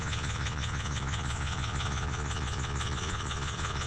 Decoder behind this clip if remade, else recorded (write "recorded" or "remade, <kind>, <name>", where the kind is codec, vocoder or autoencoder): remade, vocoder, Vocos